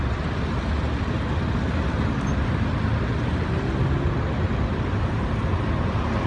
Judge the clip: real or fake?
real